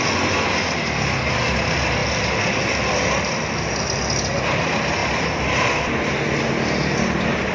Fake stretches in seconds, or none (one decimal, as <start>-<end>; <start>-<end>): none